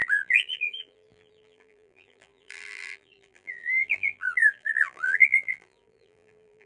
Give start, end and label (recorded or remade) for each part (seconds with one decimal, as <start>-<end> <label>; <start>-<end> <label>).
0.0-6.7 remade